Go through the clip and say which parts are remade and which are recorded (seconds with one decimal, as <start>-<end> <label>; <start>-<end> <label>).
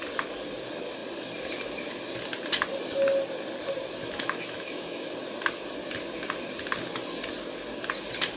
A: 0.0-4.0 recorded; 4.0-5.1 remade; 5.1-8.4 recorded